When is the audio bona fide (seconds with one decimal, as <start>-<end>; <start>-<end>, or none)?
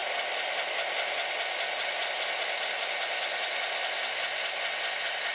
0.0-5.3